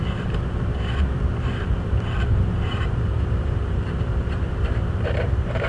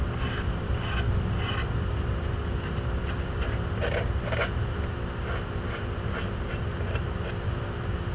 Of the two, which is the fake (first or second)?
first